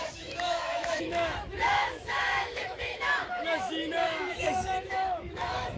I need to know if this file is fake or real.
fake